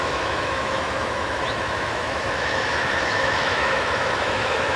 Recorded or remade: remade